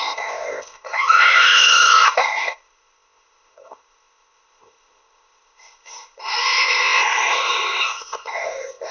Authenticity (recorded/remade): remade